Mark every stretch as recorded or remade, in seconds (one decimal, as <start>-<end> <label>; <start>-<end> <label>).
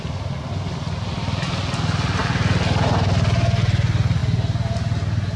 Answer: 0.0-5.4 recorded